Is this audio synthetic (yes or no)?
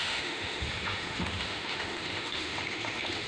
yes